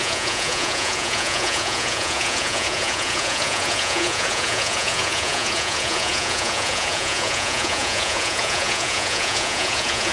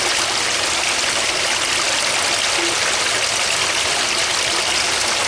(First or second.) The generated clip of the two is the first